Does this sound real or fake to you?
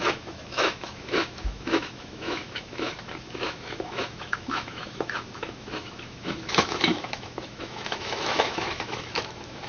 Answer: fake